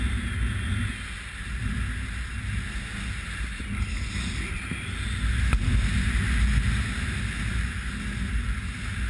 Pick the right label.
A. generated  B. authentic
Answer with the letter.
B